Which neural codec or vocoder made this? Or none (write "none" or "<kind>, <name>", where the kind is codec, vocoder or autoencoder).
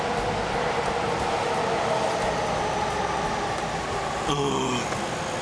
none